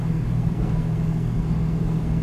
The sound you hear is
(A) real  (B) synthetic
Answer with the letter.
B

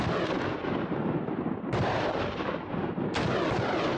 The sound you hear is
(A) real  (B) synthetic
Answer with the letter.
A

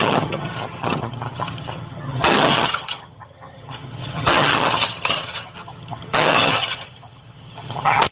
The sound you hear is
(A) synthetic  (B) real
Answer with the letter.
A